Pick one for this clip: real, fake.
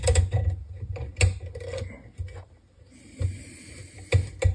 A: real